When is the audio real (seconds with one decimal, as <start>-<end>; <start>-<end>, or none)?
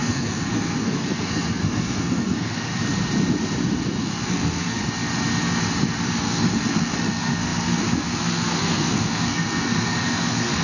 2.7-4.0; 4.8-6.2